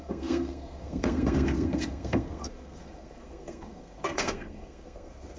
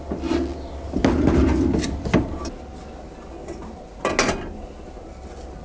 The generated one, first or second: first